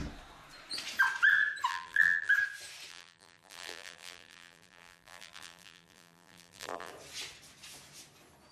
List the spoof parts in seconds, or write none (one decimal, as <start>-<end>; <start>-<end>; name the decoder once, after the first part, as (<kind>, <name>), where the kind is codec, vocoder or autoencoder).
1.7-2.3 (vocoder, BigVGAN v2); 2.9-6.9

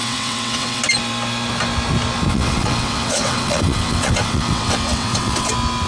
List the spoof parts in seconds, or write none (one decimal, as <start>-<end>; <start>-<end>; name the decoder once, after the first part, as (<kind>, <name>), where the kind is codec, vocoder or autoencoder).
0.0-0.8 (vocoder, WaveNeXt); 2.3-5.5

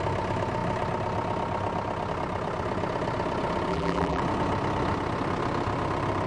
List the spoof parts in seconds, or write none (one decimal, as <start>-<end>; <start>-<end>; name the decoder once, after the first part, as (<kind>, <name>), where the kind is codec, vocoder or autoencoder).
3.7-4.2 (vocoder, BigVGAN v2)

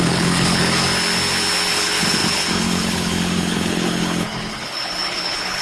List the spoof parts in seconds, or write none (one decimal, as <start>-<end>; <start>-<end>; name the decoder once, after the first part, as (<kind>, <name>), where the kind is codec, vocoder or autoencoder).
0.0-0.8 (codec, HILCodec); 1.7-5.6

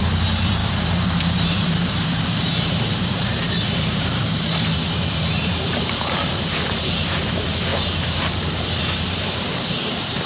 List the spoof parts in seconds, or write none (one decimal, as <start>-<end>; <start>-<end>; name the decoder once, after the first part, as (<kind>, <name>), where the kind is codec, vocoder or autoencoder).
0.0-10.3 (vocoder, BigVGAN v2)